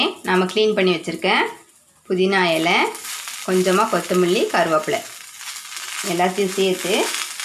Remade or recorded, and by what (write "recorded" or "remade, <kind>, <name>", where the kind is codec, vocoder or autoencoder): recorded